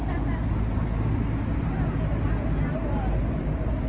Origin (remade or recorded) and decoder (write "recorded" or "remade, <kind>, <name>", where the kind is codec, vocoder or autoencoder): recorded